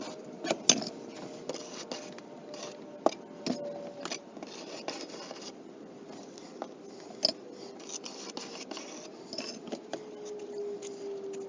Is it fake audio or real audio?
real